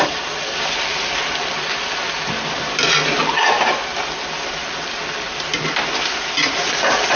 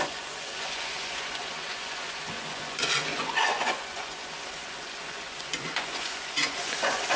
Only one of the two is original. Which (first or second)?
first